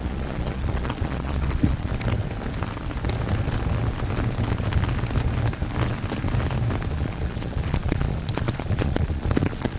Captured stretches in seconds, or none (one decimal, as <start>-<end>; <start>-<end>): 1.9-6.9